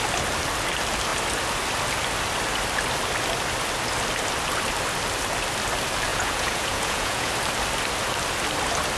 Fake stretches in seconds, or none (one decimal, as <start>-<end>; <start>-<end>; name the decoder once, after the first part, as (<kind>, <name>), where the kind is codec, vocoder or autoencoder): 6.1-7.3 (vocoder, Vocos)

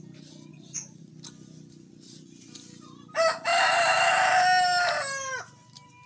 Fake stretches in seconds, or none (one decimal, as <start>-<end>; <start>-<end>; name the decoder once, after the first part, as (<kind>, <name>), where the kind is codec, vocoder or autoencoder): 0.5-1.1 (vocoder, Vocos)

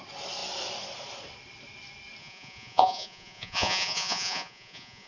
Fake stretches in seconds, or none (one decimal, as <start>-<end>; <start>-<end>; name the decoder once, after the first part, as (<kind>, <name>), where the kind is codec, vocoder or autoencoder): 2.2-5.1 (vocoder, Vocos)

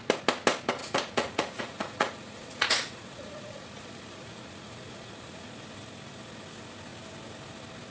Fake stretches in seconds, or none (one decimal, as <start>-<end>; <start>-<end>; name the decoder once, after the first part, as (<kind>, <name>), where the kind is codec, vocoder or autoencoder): 0.8-5.5 (vocoder, Vocos)

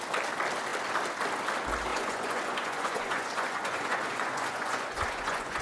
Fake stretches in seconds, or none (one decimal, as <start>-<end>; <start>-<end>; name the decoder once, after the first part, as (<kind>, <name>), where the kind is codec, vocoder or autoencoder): 1.9-5.6 (vocoder, Vocos)

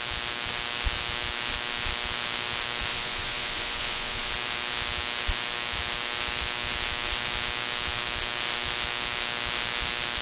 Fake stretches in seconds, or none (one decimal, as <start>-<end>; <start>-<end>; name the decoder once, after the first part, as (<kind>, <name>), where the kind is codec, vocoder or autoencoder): 2.9-4.3 (vocoder, Vocos)